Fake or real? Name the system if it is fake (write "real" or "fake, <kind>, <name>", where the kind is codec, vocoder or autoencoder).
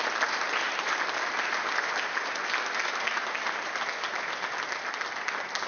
real